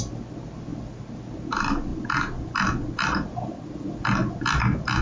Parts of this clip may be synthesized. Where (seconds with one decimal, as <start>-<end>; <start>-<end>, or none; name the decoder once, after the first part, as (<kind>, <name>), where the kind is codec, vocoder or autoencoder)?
none